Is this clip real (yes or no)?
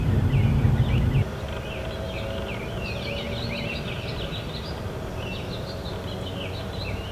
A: yes